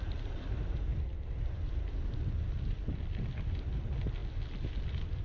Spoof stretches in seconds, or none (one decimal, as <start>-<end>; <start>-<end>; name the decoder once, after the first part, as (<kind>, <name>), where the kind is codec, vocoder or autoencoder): none